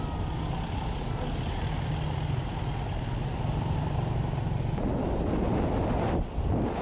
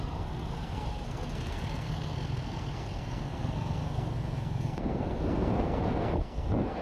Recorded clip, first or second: first